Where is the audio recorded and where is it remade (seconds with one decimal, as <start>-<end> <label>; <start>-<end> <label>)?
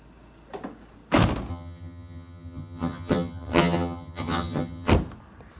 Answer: 0.0-1.5 recorded; 1.5-4.9 remade; 4.9-5.6 recorded